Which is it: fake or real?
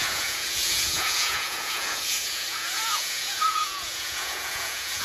fake